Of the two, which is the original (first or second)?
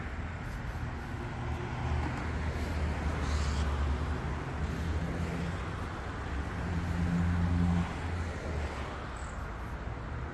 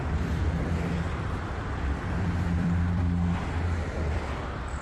first